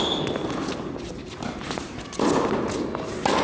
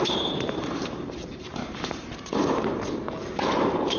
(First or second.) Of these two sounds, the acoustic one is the first